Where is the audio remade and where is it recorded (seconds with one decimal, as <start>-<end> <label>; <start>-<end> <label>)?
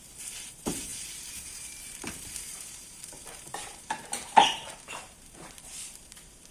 0.0-6.5 remade